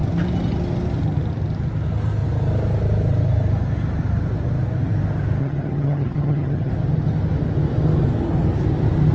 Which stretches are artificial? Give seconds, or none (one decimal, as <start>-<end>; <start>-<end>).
5.4-6.7